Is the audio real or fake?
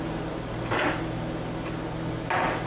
real